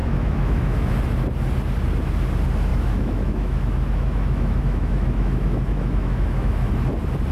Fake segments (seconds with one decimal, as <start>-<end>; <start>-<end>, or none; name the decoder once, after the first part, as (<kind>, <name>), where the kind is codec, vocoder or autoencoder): 0.0-0.9 (autoencoder, DAC-VAE); 2.7-6.7